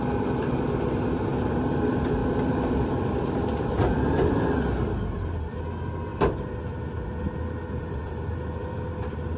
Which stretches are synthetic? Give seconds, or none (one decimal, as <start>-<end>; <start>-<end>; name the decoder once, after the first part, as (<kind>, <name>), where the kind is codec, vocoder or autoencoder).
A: 2.2-4.3 (vocoder, BigVGAN v2); 6.1-6.7; 8.0-9.0